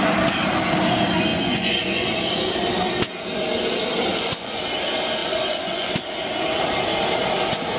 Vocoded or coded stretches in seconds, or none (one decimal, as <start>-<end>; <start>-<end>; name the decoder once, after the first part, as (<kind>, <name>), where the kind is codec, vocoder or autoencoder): 1.3-2.5 (vocoder, Vocos); 4.1-4.6; 5.2-5.9